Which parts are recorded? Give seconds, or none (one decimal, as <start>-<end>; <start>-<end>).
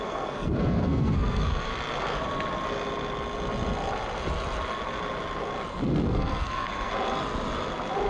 1.7-5.7; 6.9-8.1